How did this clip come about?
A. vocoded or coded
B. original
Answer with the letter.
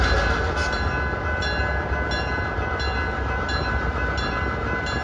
B